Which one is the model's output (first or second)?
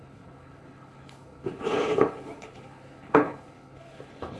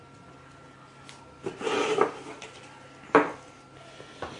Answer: first